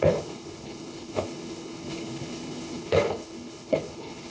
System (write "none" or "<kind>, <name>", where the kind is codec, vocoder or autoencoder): codec, HILCodec